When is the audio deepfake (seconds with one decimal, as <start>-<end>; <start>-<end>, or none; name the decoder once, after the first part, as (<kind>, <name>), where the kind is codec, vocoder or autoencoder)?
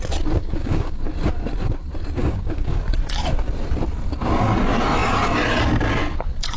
0.4-1.0 (codec, DAC); 2.2-2.8